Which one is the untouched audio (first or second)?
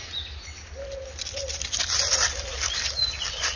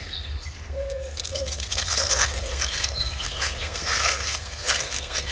first